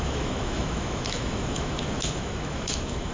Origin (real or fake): fake